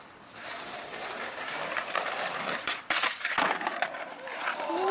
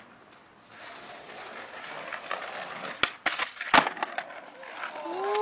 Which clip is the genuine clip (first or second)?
second